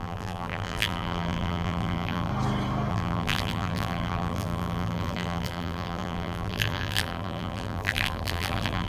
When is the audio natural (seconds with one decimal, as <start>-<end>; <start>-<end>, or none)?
2.3-2.9